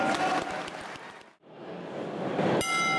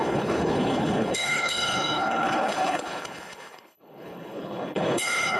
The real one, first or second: first